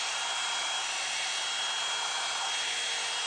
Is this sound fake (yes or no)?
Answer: no